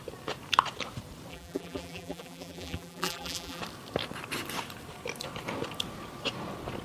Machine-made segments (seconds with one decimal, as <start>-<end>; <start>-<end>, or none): 1.3-3.6